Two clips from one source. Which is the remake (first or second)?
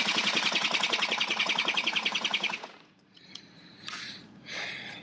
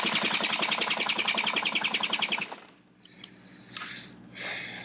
first